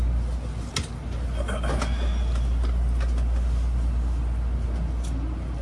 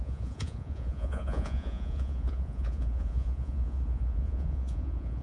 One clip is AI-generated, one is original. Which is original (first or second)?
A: first